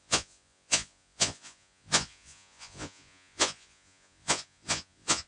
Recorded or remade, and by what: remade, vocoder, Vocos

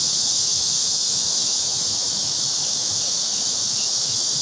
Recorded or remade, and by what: remade, autoencoder, DAC-VAE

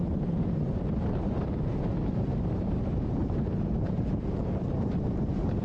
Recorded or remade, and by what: remade, vocoder, BigVGAN v2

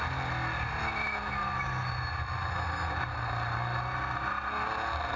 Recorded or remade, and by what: recorded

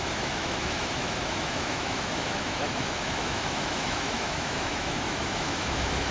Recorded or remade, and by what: remade, autoencoder, DAC-VAE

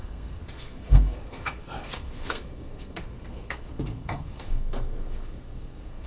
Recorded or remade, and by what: remade, codec, SNAC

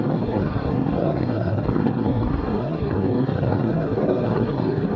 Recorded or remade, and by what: remade, codec, SNAC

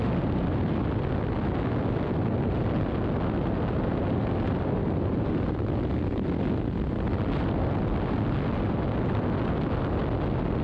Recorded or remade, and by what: recorded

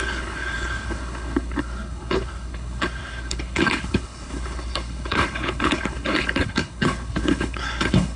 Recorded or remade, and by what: remade, codec, HILCodec